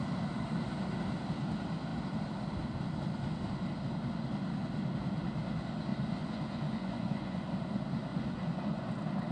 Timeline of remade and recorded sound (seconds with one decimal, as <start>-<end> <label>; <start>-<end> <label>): 0.0-5.9 recorded; 5.9-7.5 remade; 7.5-8.1 recorded; 8.1-8.9 remade; 8.9-9.3 recorded